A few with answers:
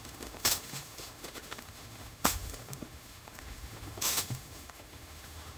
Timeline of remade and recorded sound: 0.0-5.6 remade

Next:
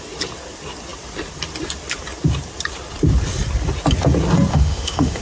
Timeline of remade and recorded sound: 0.0-4.5 recorded; 4.5-5.2 remade

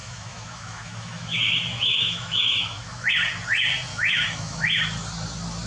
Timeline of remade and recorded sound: 0.0-3.1 remade; 3.1-3.9 recorded; 3.9-4.8 remade; 4.8-5.7 recorded

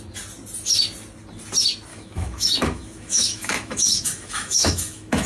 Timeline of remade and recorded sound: 0.0-1.9 recorded; 1.9-5.3 remade

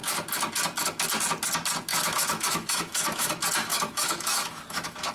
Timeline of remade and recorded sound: 0.0-1.9 recorded; 1.9-3.3 remade; 3.3-3.7 recorded; 3.7-5.1 remade